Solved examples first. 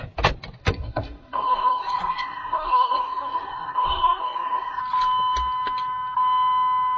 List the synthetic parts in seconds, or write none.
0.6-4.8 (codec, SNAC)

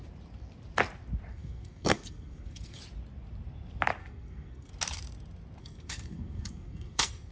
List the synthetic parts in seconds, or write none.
1.3-2.8 (codec, SNAC); 4.0-4.7; 5.6-7.3